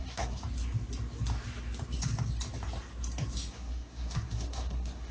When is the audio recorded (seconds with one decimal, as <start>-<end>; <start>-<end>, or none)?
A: 0.4-3.5

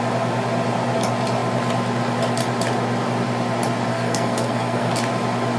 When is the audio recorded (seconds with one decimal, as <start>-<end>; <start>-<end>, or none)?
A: 0.0-3.9; 4.9-5.6

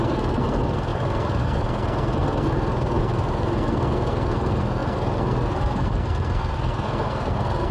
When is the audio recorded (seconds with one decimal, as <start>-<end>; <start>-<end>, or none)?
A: none

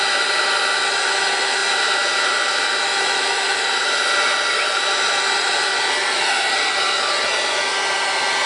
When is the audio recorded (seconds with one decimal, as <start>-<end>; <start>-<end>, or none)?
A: 0.0-8.5

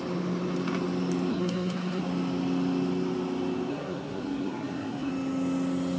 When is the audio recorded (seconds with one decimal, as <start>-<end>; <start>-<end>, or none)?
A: 0.0-1.3; 2.0-3.7; 5.1-6.0

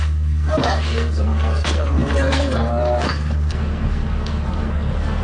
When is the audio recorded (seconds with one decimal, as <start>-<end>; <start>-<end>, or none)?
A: none

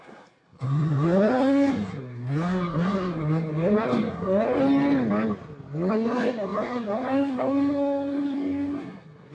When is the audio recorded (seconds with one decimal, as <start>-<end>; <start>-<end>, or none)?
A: 4.6-5.9

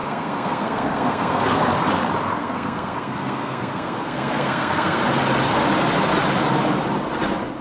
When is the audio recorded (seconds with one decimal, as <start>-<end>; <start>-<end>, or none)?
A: 1.7-2.4; 5.0-7.6